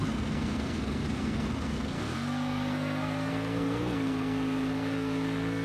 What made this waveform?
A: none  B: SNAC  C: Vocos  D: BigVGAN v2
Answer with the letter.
B